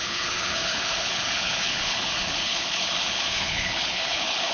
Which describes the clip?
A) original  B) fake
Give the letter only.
B